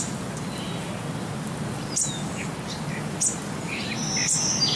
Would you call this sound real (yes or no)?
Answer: yes